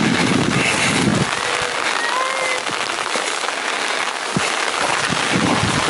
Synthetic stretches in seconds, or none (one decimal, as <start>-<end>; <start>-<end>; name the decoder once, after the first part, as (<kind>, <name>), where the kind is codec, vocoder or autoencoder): none